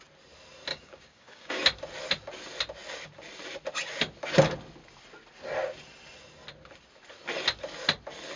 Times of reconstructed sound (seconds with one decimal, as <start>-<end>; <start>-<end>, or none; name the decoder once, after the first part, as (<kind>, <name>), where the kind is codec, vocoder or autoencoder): 0.7-1.6 (codec, DAC)